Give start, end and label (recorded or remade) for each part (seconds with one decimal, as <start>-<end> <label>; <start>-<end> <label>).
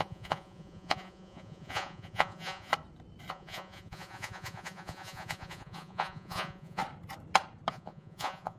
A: 0.0-2.7 remade; 2.7-3.3 recorded; 3.3-6.8 remade; 6.8-7.7 recorded; 7.7-8.6 remade